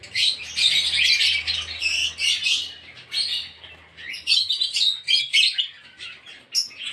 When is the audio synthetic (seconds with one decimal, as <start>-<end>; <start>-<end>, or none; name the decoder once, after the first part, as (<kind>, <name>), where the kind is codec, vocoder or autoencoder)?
none